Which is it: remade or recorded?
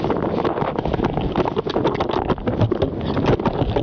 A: recorded